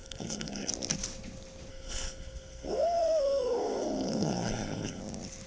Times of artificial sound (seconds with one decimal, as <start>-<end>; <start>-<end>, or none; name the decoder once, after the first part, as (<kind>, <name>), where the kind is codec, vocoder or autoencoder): 0.0-0.7 (codec, SNAC); 1.7-5.0